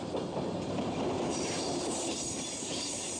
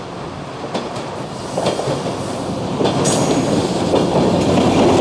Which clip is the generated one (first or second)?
first